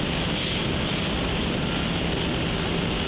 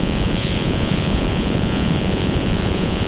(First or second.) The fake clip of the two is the second